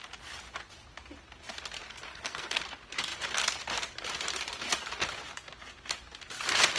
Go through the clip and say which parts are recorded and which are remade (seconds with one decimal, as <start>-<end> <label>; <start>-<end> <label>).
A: 0.0-2.1 recorded; 2.1-2.6 remade; 2.6-6.8 recorded